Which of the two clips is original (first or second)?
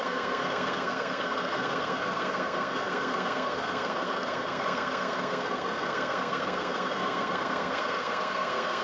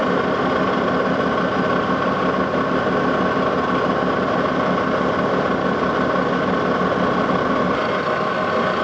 second